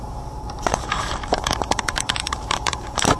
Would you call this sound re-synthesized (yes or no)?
yes